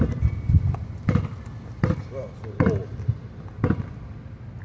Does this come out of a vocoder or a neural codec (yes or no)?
no